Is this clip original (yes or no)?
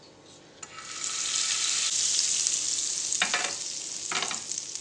yes